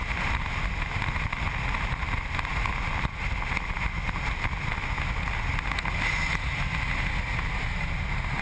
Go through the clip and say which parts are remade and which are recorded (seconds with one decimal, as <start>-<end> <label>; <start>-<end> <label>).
0.0-8.4 recorded